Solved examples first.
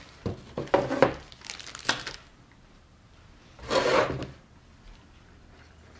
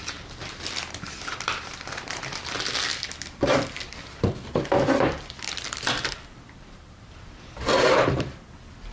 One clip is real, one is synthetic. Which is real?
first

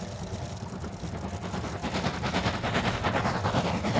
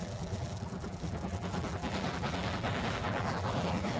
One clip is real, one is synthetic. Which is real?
first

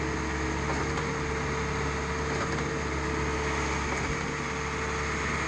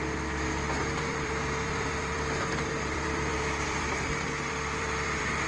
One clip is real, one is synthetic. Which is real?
first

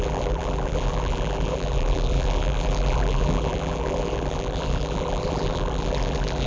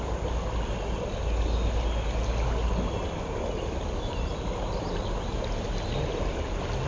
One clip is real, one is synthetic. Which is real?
second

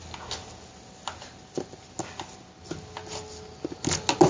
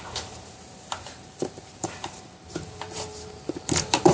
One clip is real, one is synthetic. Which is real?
first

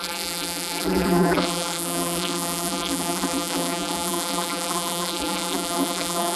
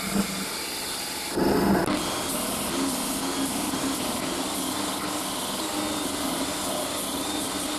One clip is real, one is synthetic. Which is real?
second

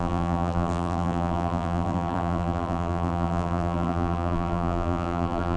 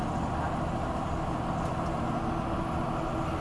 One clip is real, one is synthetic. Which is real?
second